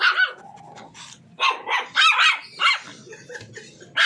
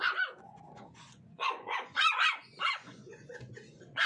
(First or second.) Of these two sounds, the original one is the first